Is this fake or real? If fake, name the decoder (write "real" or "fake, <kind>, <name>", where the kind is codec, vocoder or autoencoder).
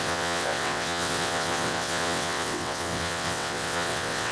fake, vocoder, WaveNeXt